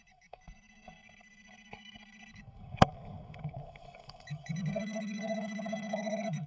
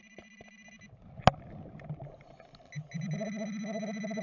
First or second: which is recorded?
second